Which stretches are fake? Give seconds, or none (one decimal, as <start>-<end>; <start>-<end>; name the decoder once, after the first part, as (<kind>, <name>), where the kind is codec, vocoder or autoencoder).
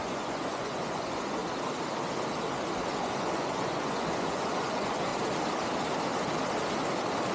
0.0-1.4 (vocoder, Vocos); 2.9-5.1